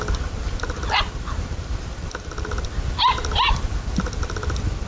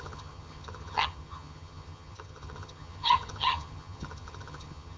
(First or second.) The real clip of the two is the first